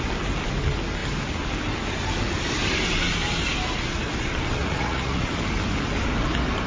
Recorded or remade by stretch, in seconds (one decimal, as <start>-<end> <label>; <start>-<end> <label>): 0.0-4.6 recorded; 4.6-5.3 remade; 5.3-6.7 recorded